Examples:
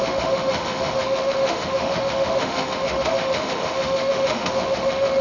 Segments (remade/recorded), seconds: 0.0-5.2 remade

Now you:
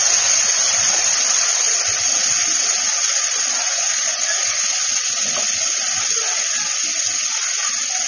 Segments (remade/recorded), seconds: 0.0-0.7 recorded; 0.7-2.0 remade; 2.0-8.1 recorded

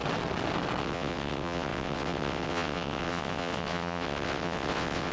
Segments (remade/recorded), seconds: 0.0-0.8 recorded; 0.8-5.1 remade

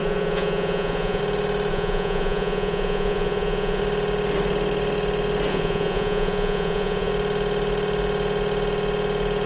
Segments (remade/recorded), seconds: 0.0-1.2 remade; 1.2-1.7 recorded; 1.7-3.8 remade; 3.8-5.5 recorded; 5.5-7.1 remade; 7.1-9.5 recorded